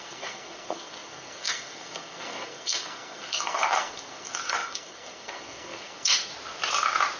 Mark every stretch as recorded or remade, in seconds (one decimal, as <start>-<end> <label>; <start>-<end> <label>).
0.0-6.3 remade; 6.3-7.2 recorded